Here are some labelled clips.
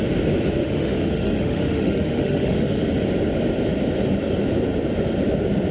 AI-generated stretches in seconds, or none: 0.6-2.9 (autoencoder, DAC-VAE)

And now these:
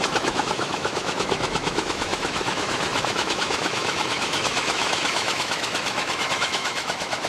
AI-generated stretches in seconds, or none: 0.0-7.3 (autoencoder, DAC-VAE)